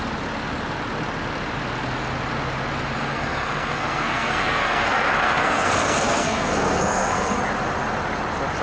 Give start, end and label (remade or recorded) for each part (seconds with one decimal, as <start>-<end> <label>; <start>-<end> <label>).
0.0-3.0 recorded; 3.0-7.4 remade; 7.4-8.6 recorded